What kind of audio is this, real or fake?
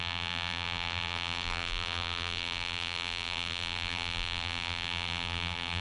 fake